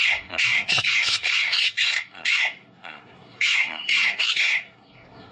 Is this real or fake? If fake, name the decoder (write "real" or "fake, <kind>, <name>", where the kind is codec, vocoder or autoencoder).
fake, codec, SNAC